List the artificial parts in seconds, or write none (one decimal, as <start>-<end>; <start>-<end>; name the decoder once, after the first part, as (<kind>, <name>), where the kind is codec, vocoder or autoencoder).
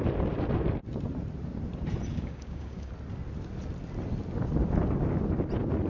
2.1-2.9 (codec, DAC)